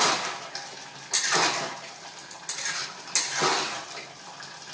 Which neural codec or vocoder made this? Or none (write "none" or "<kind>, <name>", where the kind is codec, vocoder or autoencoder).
none